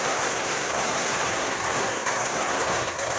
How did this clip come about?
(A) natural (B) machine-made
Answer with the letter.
B